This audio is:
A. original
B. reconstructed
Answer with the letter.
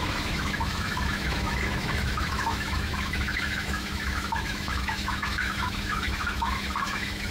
B